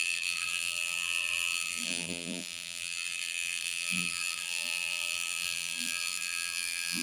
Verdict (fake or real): fake